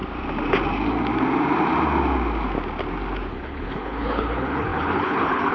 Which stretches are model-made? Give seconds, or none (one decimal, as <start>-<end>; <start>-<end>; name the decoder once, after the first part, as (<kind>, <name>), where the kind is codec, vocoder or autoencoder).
3.3-5.5 (codec, HILCodec)